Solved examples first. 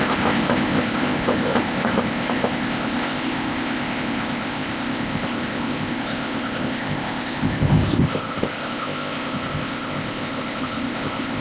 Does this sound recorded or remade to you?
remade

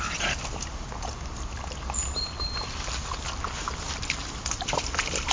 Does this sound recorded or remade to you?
recorded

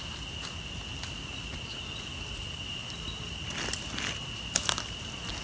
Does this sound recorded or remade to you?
recorded